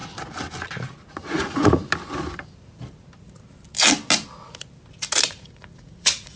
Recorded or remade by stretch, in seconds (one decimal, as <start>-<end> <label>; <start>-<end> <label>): 0.0-1.1 recorded; 1.1-1.8 remade; 1.8-5.3 recorded; 5.3-6.4 remade